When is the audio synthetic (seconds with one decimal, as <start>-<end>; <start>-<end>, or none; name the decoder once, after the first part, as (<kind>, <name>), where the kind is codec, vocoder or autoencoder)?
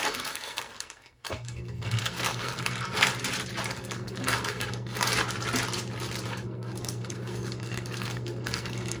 0.0-3.1 (codec, SNAC); 3.7-5.1; 6.3-9.0